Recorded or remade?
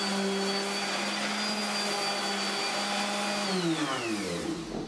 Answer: recorded